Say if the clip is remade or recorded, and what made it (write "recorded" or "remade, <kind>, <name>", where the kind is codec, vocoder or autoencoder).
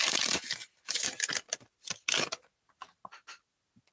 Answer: recorded